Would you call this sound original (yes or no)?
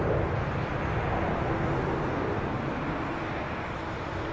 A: yes